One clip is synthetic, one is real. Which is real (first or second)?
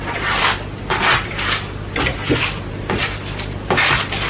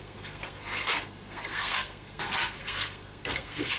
first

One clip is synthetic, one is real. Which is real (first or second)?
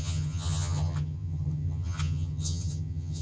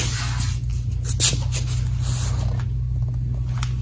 second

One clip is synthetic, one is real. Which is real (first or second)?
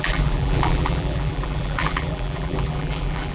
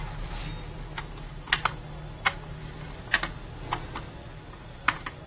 second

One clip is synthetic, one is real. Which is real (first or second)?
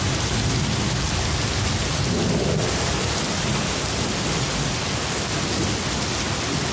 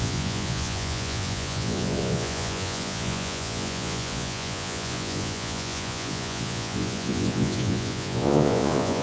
first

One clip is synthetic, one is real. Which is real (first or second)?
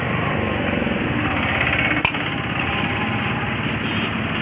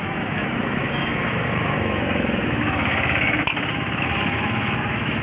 first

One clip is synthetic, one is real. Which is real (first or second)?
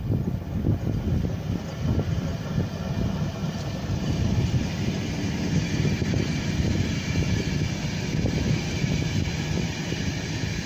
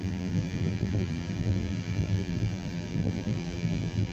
first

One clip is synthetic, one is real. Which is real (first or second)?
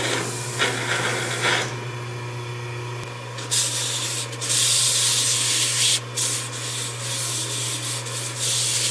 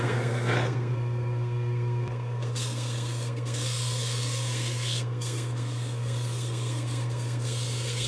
first